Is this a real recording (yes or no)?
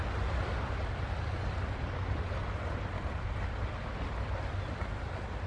yes